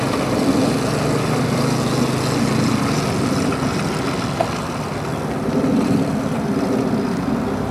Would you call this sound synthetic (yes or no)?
no